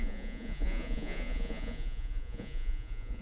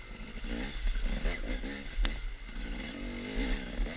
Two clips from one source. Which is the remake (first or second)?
first